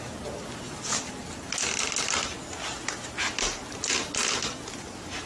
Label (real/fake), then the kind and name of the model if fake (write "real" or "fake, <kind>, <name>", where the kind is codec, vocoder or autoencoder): real